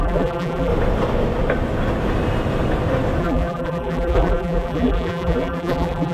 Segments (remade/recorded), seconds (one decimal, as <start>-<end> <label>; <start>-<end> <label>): 0.0-0.7 remade; 0.7-3.2 recorded; 3.2-6.1 remade